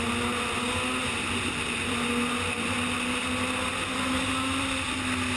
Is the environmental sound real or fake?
real